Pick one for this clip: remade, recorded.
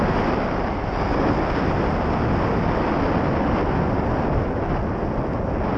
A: recorded